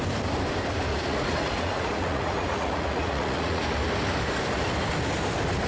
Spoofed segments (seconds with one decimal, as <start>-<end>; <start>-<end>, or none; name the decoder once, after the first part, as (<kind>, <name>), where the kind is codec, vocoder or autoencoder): 0.9-3.6 (vocoder, Vocos)